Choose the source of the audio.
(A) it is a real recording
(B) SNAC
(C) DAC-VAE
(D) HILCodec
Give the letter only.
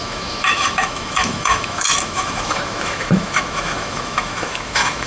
C